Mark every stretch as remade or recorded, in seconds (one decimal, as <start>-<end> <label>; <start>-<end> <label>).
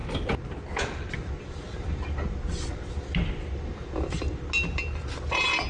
0.0-3.4 recorded; 3.4-3.8 remade; 3.8-5.7 recorded